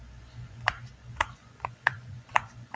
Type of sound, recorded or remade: remade